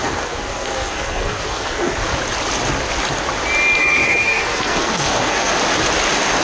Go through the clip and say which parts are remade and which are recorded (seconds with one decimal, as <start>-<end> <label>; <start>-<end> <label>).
0.0-2.1 remade; 2.1-3.8 recorded; 3.8-5.5 remade; 5.5-6.4 recorded